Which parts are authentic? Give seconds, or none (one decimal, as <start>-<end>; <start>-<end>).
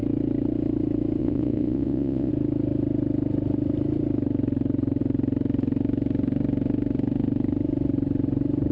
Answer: 0.0-1.2; 2.3-8.7